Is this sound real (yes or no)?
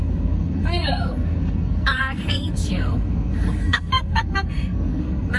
no